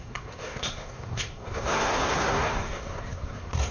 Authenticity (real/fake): fake